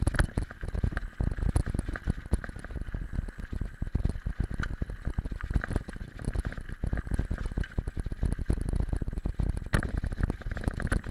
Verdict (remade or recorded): recorded